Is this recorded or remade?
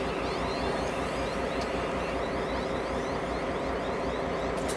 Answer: recorded